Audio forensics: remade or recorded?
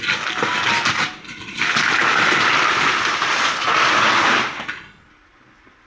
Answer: recorded